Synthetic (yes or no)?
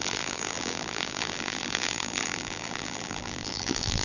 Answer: yes